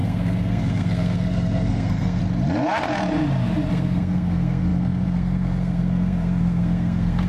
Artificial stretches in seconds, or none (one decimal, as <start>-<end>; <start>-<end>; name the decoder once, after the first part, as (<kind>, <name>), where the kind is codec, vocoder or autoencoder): 0.0-2.2 (codec, SNAC); 3.7-7.3